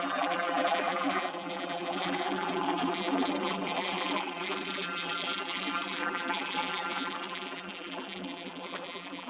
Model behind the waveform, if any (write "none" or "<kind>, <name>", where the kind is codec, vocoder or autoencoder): vocoder, BigVGAN v2